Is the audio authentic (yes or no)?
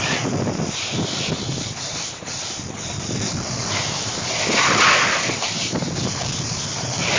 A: no